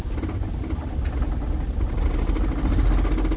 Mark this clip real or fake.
real